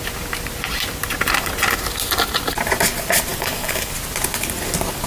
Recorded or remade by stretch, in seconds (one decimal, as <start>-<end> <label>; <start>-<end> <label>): 0.0-3.3 recorded; 3.3-3.9 remade; 3.9-5.1 recorded